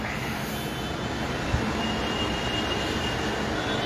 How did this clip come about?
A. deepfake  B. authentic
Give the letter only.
B